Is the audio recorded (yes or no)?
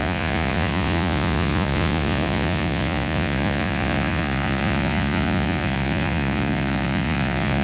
no